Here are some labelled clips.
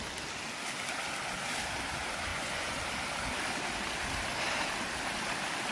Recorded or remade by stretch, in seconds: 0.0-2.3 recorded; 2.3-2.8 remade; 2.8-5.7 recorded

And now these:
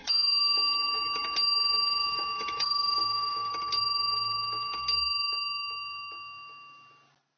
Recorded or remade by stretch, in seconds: 0.0-0.7 remade; 0.7-2.0 recorded; 2.0-3.5 remade; 3.5-7.4 recorded

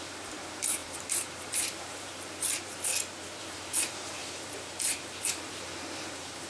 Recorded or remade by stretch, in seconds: 0.0-2.9 remade; 2.9-3.4 recorded; 3.4-6.5 remade

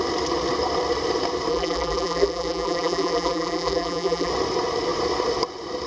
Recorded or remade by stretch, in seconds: 0.0-1.5 recorded; 1.5-4.3 remade; 4.3-5.9 recorded

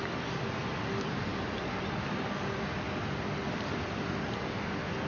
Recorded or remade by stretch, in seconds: 0.0-5.1 recorded

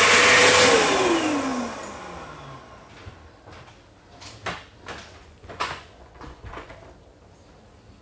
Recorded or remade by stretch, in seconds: 0.0-5.2 recorded; 5.2-6.7 remade; 6.7-8.0 recorded

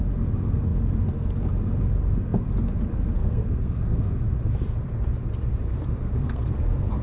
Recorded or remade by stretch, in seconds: 0.0-3.2 recorded; 3.2-4.2 remade; 4.2-6.0 recorded; 6.0-6.5 remade; 6.5-7.0 recorded

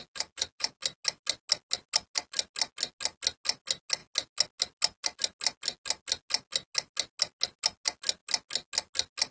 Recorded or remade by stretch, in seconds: 0.0-9.3 recorded